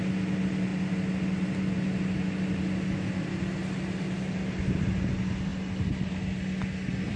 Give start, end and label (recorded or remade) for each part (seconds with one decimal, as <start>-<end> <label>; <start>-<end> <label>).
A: 0.0-7.2 recorded

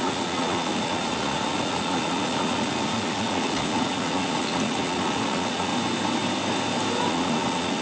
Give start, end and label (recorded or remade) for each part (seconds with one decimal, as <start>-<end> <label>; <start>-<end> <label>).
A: 0.0-5.7 remade; 5.7-7.1 recorded; 7.1-7.8 remade

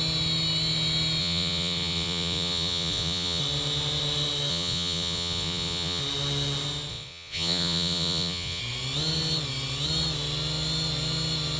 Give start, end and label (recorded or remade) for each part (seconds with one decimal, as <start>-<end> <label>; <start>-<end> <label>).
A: 0.0-1.2 recorded; 1.2-3.4 remade; 3.4-4.5 recorded; 4.5-6.0 remade; 6.0-6.9 recorded; 6.9-8.6 remade; 8.6-11.6 recorded

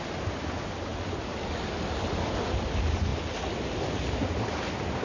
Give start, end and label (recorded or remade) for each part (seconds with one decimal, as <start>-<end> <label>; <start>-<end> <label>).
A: 0.0-5.0 recorded